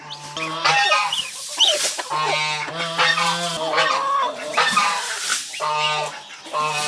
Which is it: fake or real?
real